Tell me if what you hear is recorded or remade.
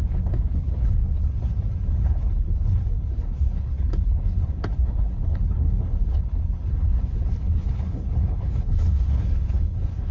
remade